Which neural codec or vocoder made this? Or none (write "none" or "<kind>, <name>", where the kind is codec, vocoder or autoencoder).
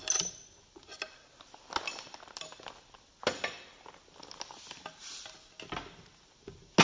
none